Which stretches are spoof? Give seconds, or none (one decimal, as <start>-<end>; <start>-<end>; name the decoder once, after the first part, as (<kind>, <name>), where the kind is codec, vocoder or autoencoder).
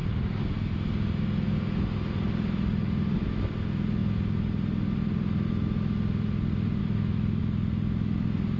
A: 6.8-7.4 (autoencoder, DAC-VAE)